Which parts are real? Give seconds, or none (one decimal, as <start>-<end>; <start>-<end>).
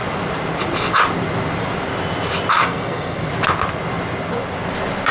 0.0-2.5; 3.3-5.1